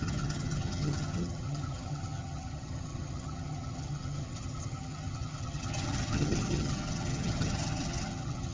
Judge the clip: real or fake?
fake